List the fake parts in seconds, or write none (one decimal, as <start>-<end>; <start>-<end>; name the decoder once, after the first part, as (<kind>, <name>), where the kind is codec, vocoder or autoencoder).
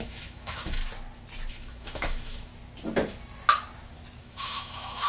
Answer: 0.0-0.8 (autoencoder, DAC-VAE); 1.5-2.5; 4.2-5.1